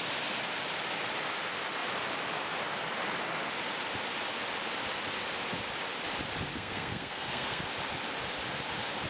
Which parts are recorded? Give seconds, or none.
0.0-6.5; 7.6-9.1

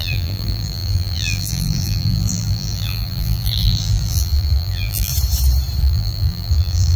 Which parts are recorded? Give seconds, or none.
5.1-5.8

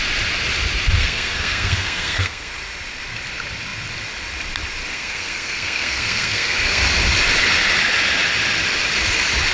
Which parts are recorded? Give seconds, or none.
0.0-1.0; 2.5-4.9; 6.8-9.5

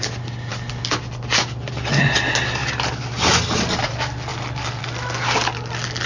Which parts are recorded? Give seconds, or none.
0.0-2.6; 3.9-4.3; 4.8-6.1